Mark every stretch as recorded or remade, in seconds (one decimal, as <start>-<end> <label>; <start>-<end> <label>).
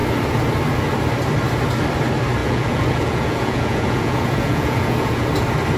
0.0-2.4 recorded; 2.4-5.3 remade; 5.3-5.8 recorded